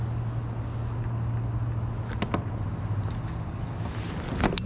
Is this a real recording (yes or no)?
yes